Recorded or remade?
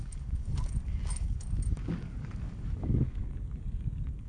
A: remade